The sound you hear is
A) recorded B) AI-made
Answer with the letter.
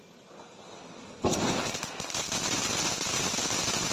A